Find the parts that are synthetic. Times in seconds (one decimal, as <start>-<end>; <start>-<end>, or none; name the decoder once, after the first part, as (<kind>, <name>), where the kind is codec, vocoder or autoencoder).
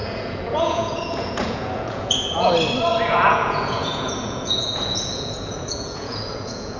0.0-2.5 (vocoder, Vocos); 2.9-6.8